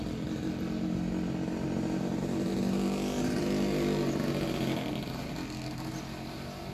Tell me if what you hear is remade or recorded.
recorded